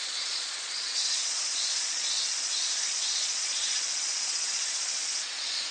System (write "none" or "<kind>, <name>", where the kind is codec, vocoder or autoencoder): vocoder, Vocos